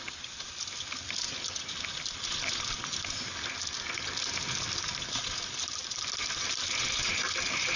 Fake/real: real